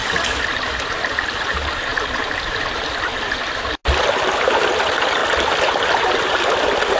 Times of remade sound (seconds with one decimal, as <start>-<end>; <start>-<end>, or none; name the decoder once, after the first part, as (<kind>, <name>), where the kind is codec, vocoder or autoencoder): 0.0-1.4 (vocoder, BigVGAN v2); 1.9-3.7